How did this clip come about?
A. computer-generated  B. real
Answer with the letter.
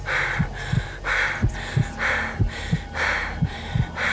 B